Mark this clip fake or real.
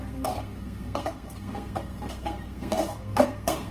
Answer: fake